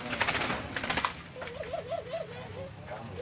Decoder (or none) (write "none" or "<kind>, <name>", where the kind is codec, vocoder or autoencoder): none